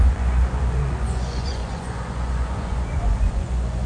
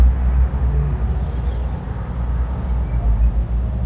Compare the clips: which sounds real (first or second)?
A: second